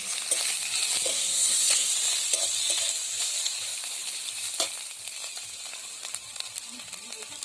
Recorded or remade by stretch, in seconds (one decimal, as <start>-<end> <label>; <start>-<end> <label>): 0.0-1.1 recorded; 1.1-1.9 remade; 1.9-7.4 recorded